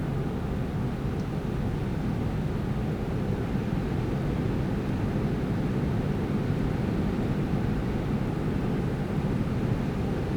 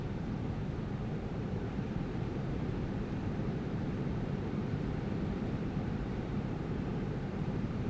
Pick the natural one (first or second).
first